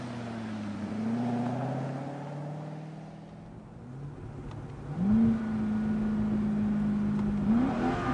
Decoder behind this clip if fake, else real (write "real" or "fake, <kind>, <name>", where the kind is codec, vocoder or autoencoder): real